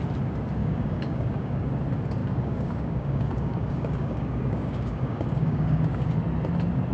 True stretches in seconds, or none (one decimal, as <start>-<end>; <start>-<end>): 0.0-0.6; 1.7-2.2; 6.1-6.9